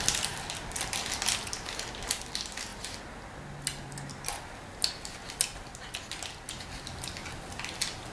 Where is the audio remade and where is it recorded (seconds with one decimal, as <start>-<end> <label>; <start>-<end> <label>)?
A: 0.0-8.1 recorded